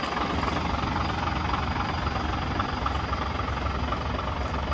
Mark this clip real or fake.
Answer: real